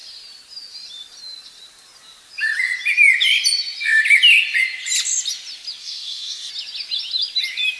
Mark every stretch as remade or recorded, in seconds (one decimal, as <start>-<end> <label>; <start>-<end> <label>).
0.0-5.8 recorded; 5.8-6.5 remade; 6.5-7.8 recorded